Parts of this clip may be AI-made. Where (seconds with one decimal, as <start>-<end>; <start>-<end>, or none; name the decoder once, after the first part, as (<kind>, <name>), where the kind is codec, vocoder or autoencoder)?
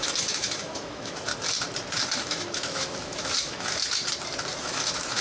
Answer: 0.0-1.3 (autoencoder, DAC-VAE); 2.2-3.8; 4.6-5.2